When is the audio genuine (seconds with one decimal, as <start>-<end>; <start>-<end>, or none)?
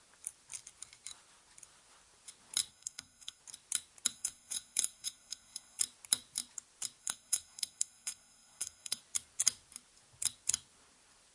0.0-2.7; 3.4-4.1; 5.8-7.0; 9.0-11.3